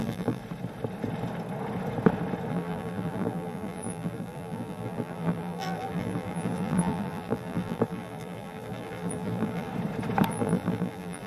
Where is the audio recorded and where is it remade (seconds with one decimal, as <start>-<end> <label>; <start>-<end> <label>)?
0.0-0.4 remade; 0.4-2.5 recorded; 2.5-9.7 remade; 9.7-10.3 recorded; 10.3-11.3 remade